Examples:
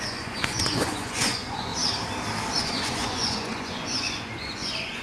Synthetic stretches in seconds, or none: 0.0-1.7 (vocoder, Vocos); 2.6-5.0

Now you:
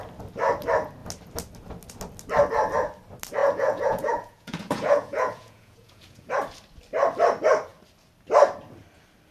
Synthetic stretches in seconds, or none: 3.4-6.3 (vocoder, Vocos)

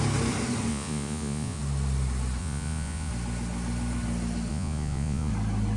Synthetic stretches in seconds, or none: 0.7-1.6 (vocoder, Vocos); 2.4-3.1; 4.5-5.3

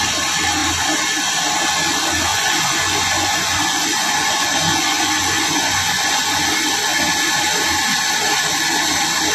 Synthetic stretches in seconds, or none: 2.3-6.4 (vocoder, Vocos)

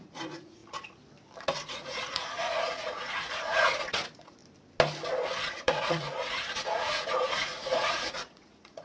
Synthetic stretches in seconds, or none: 0.0-0.6 (vocoder, Vocos); 1.4-4.4; 5.5-8.8

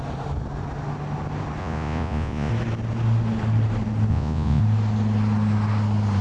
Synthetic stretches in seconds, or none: 1.6-2.5 (vocoder, Vocos); 4.1-4.6

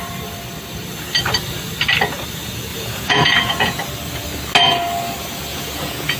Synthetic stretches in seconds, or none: 2.7-3.8 (vocoder, Vocos); 5.5-6.2